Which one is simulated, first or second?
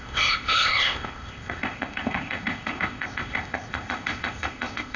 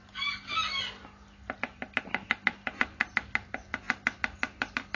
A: first